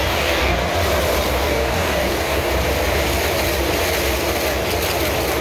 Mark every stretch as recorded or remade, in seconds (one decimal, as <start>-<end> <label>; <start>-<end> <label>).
0.0-0.6 remade; 0.6-1.3 recorded; 1.3-2.5 remade; 2.5-5.4 recorded